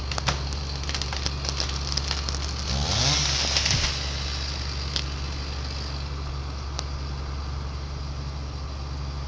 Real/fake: real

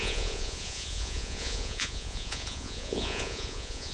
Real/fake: fake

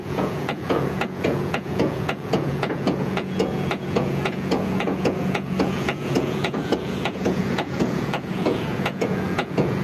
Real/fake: fake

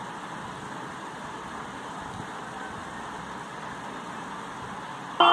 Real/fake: real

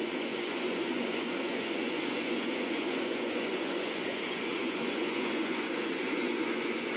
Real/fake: fake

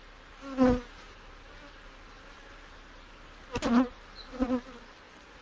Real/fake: real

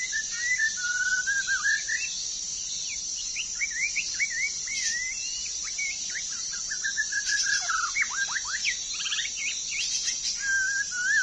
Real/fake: real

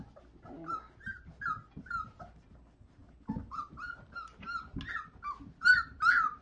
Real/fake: real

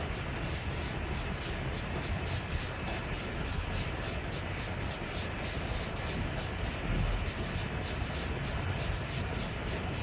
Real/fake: real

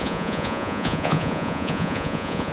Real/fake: fake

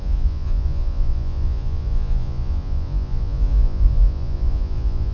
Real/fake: fake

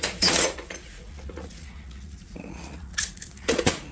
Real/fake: fake